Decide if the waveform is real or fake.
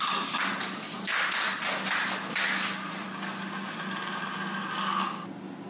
real